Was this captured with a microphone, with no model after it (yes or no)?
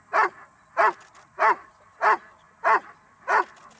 yes